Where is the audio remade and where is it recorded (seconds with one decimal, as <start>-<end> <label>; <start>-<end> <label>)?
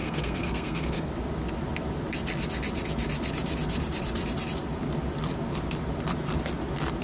0.0-1.1 remade; 1.1-7.0 recorded